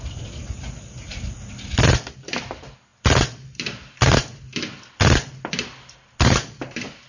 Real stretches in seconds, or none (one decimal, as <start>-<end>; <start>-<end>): 0.0-7.1